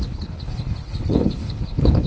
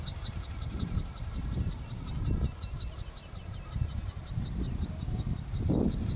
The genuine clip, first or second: second